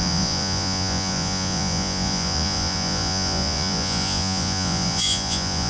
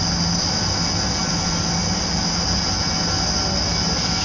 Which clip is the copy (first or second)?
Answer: first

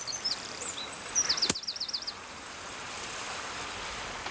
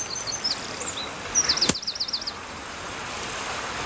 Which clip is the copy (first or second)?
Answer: first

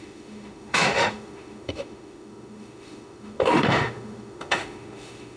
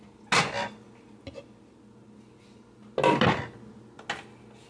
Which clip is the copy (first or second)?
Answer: first